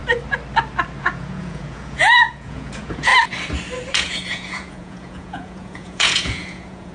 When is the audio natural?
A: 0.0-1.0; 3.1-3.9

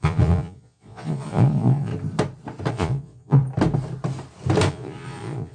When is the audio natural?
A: 1.9-2.7; 3.4-4.7

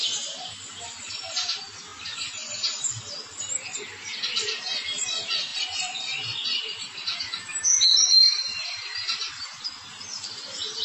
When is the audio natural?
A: 0.0-10.8